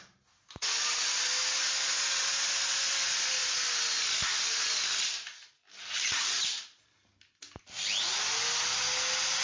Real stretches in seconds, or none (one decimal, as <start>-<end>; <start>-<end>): 0.0-9.4